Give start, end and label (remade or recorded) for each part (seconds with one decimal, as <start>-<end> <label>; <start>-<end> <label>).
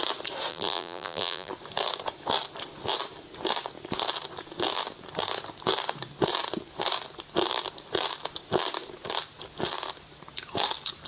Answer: 0.0-0.5 recorded; 0.5-1.5 remade; 1.5-11.1 recorded